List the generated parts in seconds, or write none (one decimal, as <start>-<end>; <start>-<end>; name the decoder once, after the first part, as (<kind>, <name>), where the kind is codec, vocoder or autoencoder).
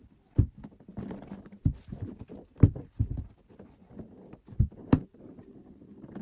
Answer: none